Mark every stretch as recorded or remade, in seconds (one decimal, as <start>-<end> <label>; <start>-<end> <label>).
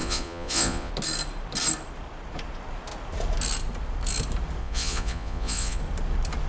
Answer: 0.0-0.9 remade; 0.9-4.6 recorded; 4.6-5.8 remade; 5.8-6.5 recorded